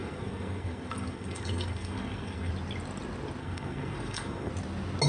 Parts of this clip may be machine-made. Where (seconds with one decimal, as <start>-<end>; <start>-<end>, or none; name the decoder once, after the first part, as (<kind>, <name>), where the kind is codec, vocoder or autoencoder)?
0.0-2.5 (codec, SNAC); 3.4-4.5